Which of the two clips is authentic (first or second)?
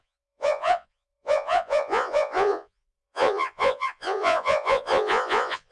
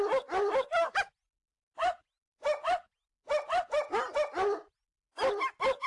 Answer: second